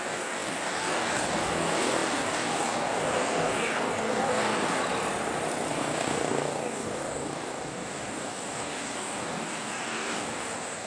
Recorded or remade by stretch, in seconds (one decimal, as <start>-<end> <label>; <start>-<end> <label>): 0.0-4.8 remade; 4.8-5.7 recorded; 5.7-10.9 remade